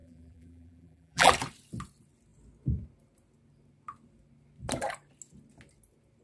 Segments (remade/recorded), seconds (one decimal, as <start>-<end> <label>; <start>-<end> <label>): 0.0-1.3 remade; 1.3-6.2 recorded